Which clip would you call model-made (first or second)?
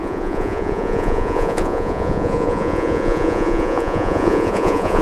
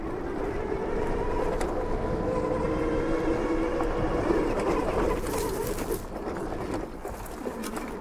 first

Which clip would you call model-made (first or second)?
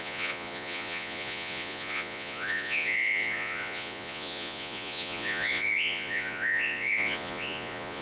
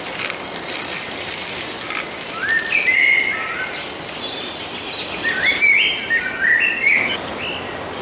first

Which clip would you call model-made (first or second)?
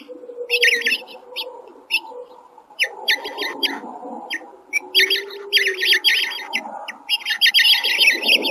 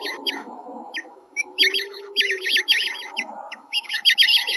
second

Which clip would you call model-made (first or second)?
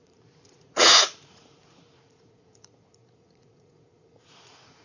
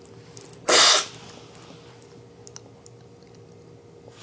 first